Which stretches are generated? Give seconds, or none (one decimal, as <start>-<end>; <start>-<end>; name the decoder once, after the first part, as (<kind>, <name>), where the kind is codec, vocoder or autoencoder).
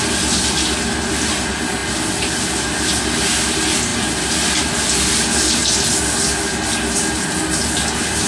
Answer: none